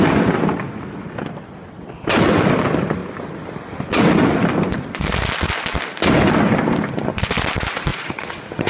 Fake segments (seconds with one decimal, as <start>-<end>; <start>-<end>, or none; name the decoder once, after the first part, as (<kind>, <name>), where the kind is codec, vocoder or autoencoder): 7.9-8.7 (vocoder, Vocos)